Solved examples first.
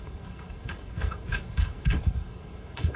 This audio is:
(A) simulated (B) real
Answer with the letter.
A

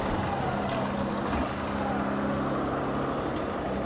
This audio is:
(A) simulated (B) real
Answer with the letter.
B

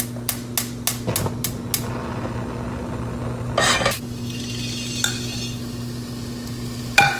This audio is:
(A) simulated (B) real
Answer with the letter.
B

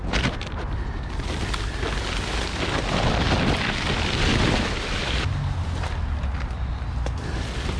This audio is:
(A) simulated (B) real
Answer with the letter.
B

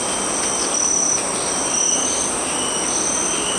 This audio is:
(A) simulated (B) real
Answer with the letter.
B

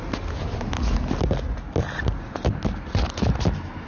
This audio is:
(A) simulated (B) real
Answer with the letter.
B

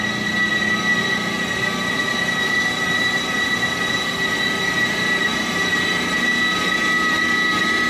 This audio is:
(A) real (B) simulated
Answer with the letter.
A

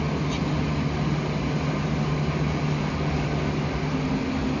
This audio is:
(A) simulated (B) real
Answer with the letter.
B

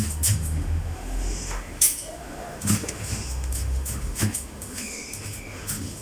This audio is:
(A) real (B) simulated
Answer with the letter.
B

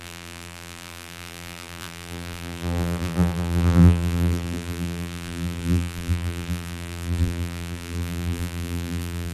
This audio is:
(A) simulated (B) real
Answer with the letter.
A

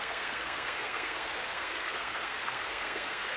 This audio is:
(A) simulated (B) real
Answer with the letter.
A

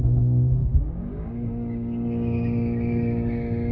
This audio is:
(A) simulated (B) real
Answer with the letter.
A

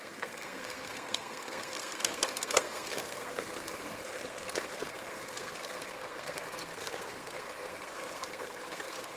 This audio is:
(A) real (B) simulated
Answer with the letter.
B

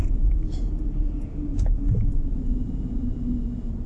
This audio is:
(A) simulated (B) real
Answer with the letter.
A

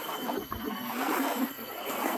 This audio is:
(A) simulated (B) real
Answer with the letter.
A